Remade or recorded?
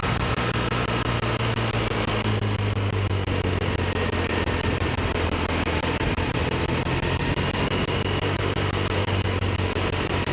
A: recorded